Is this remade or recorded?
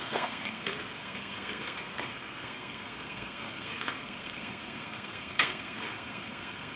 remade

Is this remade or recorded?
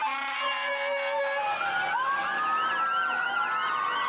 recorded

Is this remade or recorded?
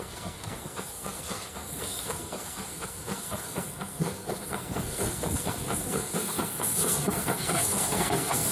remade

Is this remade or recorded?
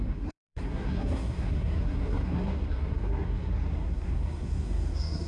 remade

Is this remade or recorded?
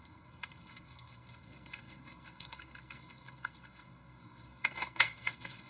remade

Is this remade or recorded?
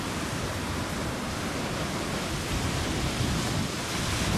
recorded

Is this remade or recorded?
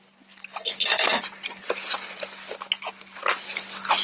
recorded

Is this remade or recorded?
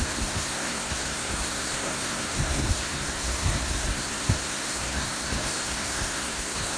remade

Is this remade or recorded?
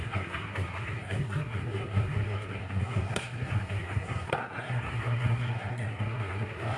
remade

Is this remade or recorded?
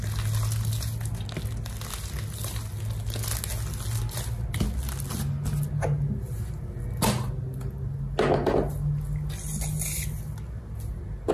recorded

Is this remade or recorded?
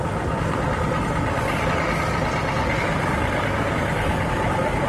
recorded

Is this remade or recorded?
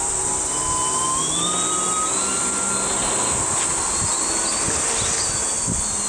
recorded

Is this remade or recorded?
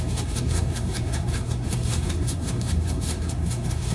remade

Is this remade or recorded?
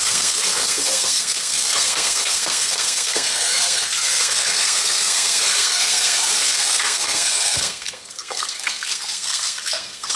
remade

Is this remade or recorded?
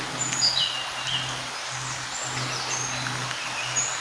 recorded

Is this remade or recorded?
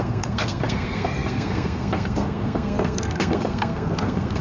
remade